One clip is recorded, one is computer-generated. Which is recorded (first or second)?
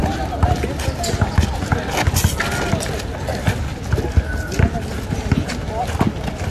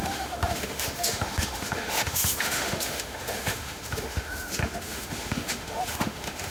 first